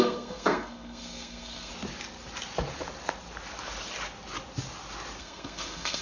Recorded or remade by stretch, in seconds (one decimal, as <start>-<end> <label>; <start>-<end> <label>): 0.0-1.7 remade; 1.7-5.2 recorded; 5.2-6.0 remade